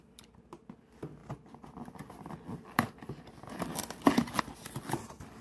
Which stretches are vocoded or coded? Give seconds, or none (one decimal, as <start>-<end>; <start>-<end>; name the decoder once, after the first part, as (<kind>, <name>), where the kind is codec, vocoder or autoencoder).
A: none